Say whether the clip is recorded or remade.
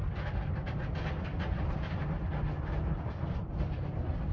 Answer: recorded